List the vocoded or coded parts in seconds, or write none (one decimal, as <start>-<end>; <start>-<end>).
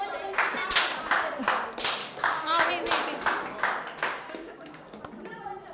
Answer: 2.0-2.7; 4.1-5.0